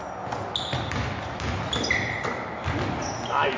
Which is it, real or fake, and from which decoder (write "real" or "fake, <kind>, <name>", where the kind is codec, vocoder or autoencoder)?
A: real